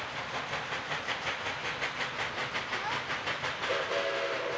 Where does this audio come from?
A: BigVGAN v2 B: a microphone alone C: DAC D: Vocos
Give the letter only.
B